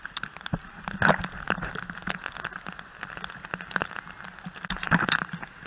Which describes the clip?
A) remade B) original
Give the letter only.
B